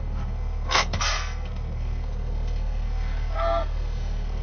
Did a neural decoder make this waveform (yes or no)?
yes